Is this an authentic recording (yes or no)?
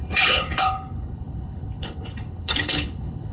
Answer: no